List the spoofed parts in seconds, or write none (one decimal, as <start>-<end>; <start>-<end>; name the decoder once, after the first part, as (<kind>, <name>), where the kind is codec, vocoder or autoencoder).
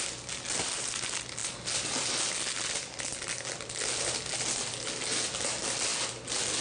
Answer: none